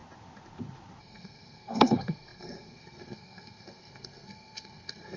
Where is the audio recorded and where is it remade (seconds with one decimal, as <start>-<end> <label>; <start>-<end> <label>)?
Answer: 0.0-1.0 recorded; 1.0-5.2 remade